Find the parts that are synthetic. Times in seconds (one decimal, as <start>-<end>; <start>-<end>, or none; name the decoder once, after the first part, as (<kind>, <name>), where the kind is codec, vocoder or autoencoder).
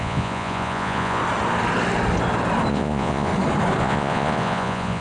0.0-1.2 (vocoder, Vocos); 2.7-3.3; 3.8-5.0